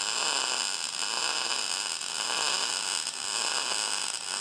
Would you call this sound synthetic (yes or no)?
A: no